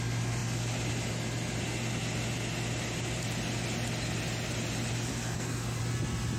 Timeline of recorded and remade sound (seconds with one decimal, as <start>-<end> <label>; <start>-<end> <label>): 0.0-5.1 recorded; 5.1-5.8 remade; 5.8-6.4 recorded